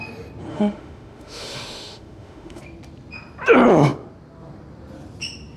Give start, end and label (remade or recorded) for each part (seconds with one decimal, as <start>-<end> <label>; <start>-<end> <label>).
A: 0.0-0.5 recorded; 0.5-2.6 remade; 2.6-5.6 recorded